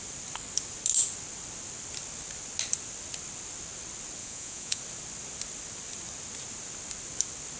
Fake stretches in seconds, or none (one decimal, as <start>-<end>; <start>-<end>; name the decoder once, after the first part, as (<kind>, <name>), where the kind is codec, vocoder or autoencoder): 4.2-4.8 (vocoder, Vocos)